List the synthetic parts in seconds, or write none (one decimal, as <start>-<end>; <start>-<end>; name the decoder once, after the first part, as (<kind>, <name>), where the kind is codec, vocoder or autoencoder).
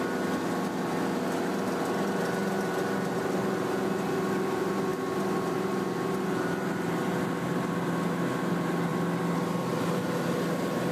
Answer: none